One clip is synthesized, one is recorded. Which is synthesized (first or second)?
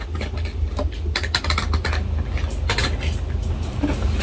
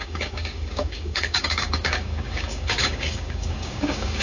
second